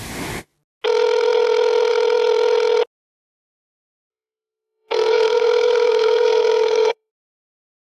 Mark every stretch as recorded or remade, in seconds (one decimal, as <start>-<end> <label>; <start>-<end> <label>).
0.0-4.1 recorded; 4.1-7.1 remade; 7.1-8.0 recorded